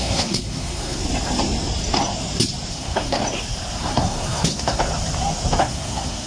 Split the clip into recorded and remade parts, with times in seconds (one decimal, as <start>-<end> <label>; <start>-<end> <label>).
0.0-1.0 remade; 1.0-2.7 recorded; 2.7-3.2 remade; 3.2-3.8 recorded; 3.8-4.8 remade; 4.8-5.6 recorded; 5.6-6.3 remade

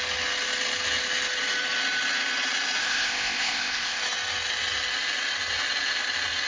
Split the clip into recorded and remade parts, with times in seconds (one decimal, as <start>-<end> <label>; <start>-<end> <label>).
0.0-2.8 recorded; 2.8-4.0 remade; 4.0-6.5 recorded

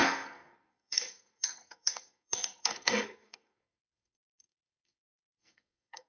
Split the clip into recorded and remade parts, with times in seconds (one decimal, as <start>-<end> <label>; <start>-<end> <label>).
0.0-6.1 remade

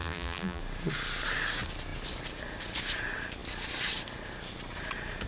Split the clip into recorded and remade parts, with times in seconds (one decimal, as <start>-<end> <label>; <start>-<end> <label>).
0.0-0.6 remade; 0.6-5.3 recorded

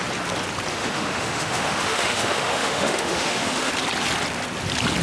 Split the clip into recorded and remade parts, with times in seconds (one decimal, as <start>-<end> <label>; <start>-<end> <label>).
0.0-0.7 recorded; 0.7-3.7 remade; 3.7-5.0 recorded

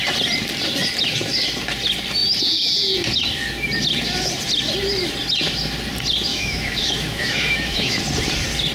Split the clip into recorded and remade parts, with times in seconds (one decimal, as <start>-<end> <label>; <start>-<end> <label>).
0.0-6.3 recorded; 6.3-8.0 remade; 8.0-8.7 recorded

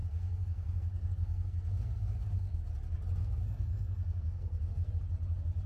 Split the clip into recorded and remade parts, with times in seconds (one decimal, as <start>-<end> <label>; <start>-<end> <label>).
0.0-2.6 remade; 2.6-3.2 recorded; 3.2-4.9 remade; 4.9-5.7 recorded

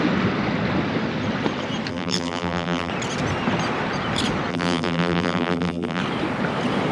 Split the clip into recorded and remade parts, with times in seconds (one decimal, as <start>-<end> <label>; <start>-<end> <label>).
0.0-1.9 recorded; 1.9-2.9 remade; 2.9-4.5 recorded; 4.5-6.0 remade; 6.0-6.9 recorded